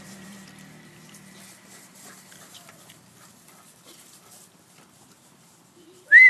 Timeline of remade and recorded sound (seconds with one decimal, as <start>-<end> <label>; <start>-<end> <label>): 0.0-6.3 remade